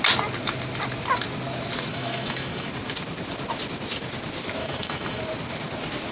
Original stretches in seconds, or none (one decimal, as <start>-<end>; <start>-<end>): 0.0-1.9; 2.7-4.6; 5.2-6.1